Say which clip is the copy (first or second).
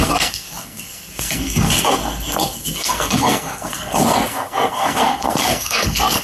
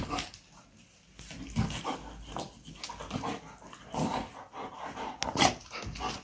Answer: first